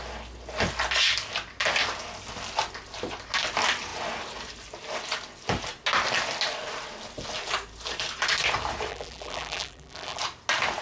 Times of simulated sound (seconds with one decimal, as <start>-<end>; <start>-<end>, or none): 8.9-10.2